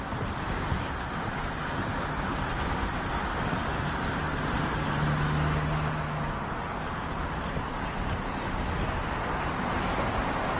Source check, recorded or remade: recorded